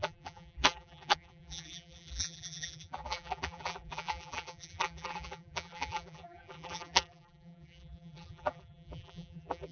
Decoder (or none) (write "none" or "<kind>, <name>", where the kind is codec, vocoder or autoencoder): vocoder, BigVGAN v2